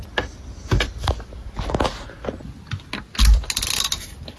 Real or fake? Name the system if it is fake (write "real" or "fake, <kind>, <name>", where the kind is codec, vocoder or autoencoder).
real